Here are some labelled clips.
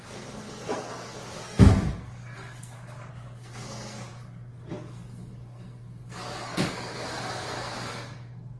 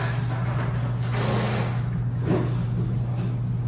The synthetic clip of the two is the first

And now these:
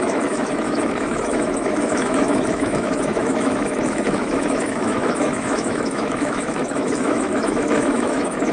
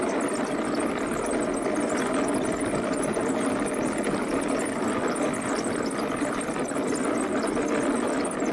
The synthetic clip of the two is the first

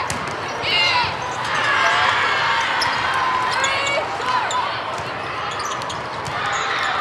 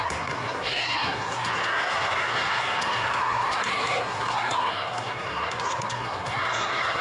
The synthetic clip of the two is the second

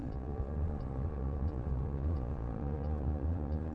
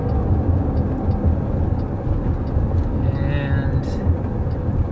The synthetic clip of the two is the first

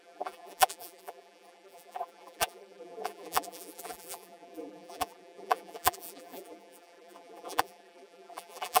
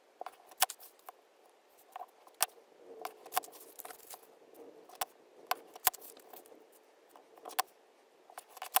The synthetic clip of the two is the first